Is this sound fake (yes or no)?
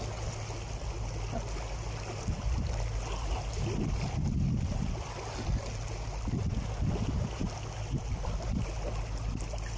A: no